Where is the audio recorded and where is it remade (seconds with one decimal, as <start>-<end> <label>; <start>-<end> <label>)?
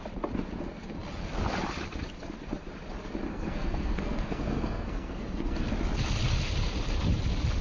0.0-3.3 recorded; 3.3-5.7 remade; 5.7-7.6 recorded